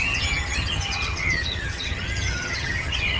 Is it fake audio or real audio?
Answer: fake